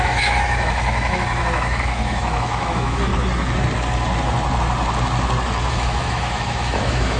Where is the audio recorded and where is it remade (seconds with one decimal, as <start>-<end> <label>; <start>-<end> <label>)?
0.0-3.1 remade; 3.1-5.7 recorded; 5.7-7.2 remade